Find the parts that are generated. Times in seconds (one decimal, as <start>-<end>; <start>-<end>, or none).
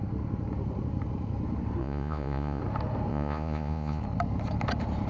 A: 1.8-2.6; 3.1-4.0